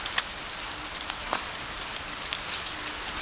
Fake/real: real